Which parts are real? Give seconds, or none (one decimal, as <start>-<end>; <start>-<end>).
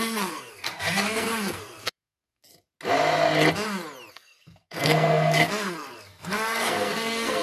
2.5-4.1